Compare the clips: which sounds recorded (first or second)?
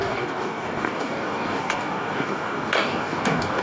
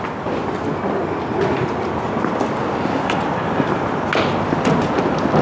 second